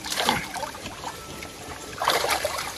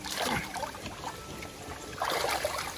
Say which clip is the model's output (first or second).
first